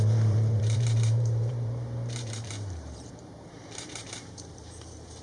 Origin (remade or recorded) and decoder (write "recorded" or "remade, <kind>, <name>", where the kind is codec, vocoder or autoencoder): remade, vocoder, BigVGAN v2